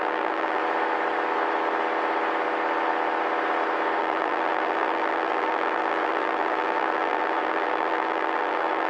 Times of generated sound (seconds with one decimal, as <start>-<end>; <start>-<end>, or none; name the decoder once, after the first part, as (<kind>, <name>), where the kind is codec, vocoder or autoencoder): 0.0-0.6 (vocoder, BigVGAN v2); 4.0-8.9